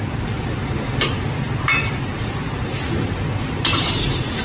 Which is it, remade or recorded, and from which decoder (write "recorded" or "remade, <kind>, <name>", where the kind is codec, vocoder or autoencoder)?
recorded